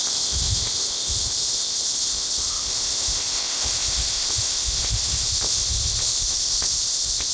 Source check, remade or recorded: remade